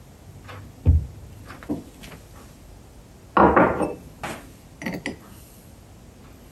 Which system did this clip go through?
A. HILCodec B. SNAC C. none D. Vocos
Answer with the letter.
C